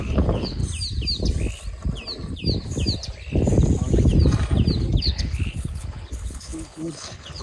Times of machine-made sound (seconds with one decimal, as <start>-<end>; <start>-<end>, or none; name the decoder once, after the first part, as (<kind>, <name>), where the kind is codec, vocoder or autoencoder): 0.0-0.6 (codec, HILCodec); 5.0-7.4